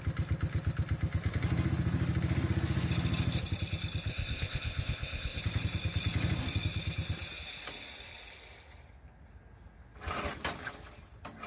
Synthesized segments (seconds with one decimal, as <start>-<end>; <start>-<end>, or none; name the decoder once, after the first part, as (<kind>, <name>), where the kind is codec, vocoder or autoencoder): 4.1-5.4 (codec, ZipCodec)